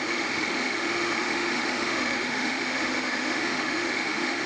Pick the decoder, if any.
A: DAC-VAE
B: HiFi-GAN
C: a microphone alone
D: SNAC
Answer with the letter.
A